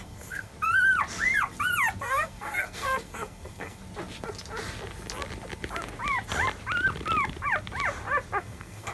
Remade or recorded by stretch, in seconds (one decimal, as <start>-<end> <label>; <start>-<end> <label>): 0.0-0.5 remade; 0.5-2.0 recorded; 2.0-3.8 remade; 3.8-8.4 recorded; 8.4-8.9 remade